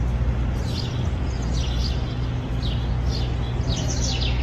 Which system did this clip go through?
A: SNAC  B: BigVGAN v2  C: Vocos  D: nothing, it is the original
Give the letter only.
D